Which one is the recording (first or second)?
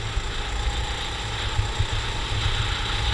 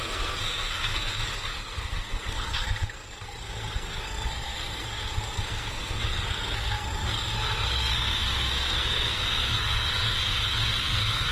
first